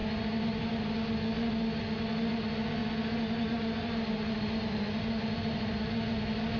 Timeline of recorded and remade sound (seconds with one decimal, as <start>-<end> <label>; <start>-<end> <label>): 0.0-6.6 recorded